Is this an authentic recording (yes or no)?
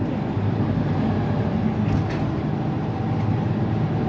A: yes